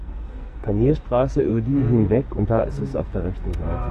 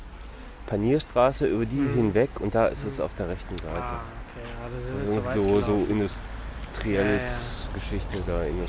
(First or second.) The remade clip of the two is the first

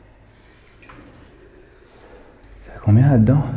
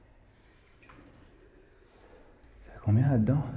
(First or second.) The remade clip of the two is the second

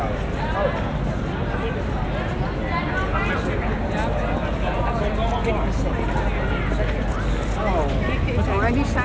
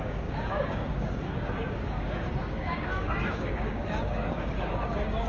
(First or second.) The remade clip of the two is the second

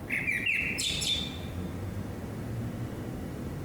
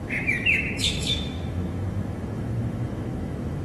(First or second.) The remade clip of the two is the second